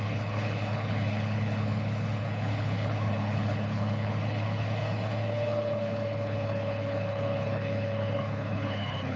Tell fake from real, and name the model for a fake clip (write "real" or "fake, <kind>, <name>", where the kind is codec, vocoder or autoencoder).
fake, codec, HILCodec